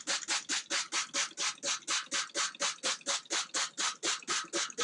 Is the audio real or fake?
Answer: real